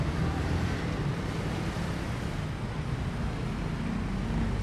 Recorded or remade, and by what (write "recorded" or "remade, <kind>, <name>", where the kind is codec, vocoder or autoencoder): recorded